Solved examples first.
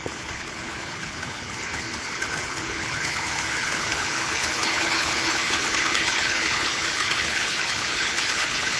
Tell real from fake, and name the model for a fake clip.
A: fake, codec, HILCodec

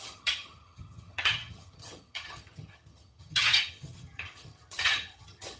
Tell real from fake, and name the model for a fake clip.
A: fake, vocoder, HiFi-GAN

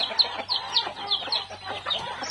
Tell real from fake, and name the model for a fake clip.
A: fake, vocoder, BigVGAN v2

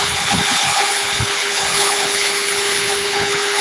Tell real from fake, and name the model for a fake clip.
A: fake, codec, HILCodec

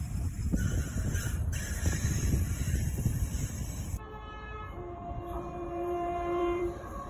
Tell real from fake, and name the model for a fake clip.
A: fake, vocoder, BigVGAN v2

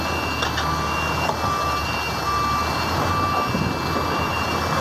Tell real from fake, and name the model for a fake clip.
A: real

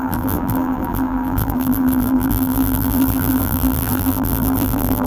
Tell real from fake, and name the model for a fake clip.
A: fake, vocoder, BigVGAN v2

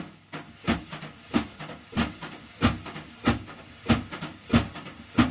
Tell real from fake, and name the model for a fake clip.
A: real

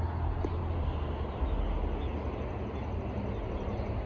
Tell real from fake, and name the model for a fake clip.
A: real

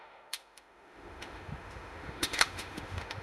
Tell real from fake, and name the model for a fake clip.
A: fake, autoencoder, DAC-VAE